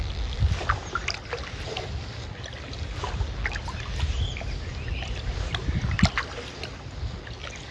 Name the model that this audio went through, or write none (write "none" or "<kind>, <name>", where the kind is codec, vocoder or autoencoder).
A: none